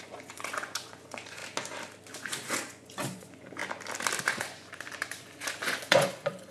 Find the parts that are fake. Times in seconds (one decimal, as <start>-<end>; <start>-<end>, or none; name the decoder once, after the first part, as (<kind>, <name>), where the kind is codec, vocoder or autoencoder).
0.0-1.4 (vocoder, Vocos); 2.1-3.6; 4.2-6.5